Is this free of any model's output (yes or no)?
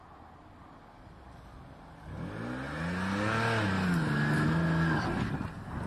yes